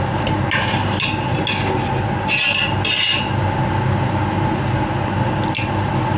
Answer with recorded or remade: recorded